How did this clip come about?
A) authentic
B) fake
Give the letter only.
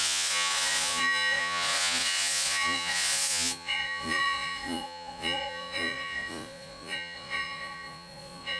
B